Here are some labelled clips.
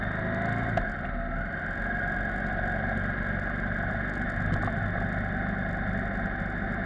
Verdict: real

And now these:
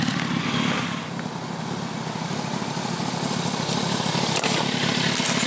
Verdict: real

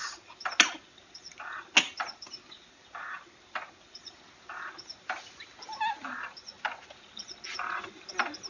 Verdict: real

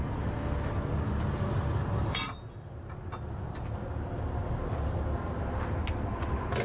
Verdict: real